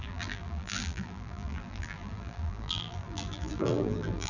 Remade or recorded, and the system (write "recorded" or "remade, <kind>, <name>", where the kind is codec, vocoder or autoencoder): remade, vocoder, BigVGAN v2